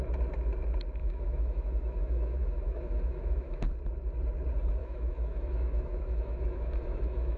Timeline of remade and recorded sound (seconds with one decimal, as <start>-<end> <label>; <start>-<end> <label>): 0.0-1.0 recorded; 1.0-3.7 remade; 3.7-4.8 recorded; 4.8-7.4 remade